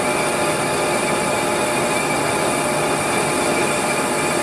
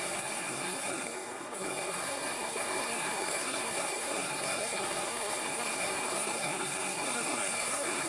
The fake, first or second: second